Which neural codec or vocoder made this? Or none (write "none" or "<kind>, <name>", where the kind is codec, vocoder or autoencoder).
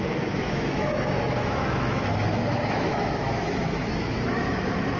autoencoder, DAC-VAE